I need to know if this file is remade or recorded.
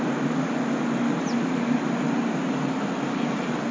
recorded